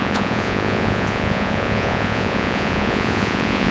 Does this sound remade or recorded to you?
remade